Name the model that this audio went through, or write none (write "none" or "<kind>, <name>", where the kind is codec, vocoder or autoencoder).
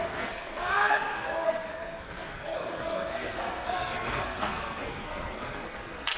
codec, SNAC